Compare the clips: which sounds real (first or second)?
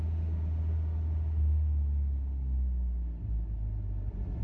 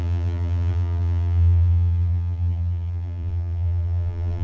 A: first